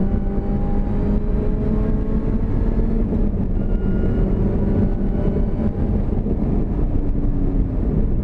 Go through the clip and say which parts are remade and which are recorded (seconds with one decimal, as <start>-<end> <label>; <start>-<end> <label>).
0.0-8.2 recorded